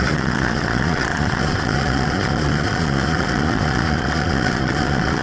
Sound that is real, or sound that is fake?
fake